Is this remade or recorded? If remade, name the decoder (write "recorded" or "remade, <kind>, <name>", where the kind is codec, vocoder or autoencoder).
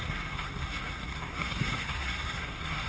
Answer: remade, codec, SNAC